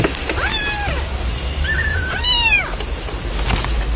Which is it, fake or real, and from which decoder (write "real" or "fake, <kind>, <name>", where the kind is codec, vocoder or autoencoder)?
fake, vocoder, BigVGAN v2